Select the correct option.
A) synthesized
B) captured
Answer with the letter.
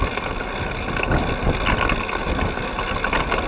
B